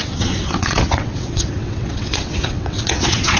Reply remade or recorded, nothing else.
remade